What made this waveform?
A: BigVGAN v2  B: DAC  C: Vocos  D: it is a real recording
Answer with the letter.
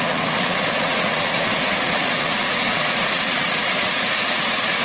C